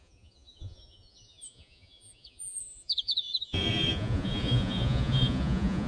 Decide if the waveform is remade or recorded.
remade